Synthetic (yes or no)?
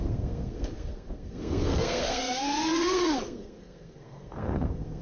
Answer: yes